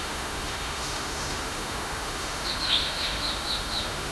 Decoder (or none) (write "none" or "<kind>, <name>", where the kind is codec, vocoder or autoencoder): autoencoder, DAC-VAE